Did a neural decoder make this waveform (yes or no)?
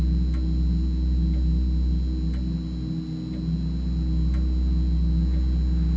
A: no